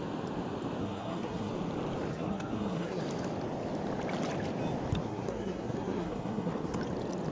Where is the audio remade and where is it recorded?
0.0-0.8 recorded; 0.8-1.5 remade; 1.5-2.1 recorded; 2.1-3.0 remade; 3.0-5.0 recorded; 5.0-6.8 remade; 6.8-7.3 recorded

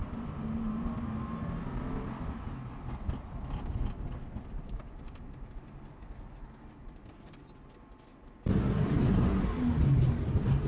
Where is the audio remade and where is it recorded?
0.0-0.9 remade; 0.9-8.1 recorded; 8.1-9.3 remade; 9.3-10.7 recorded

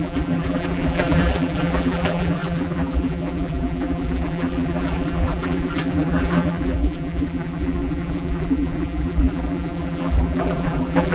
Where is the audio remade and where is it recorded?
0.0-11.1 remade